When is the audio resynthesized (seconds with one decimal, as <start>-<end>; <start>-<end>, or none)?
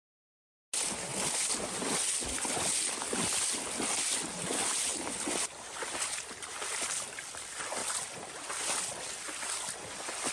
none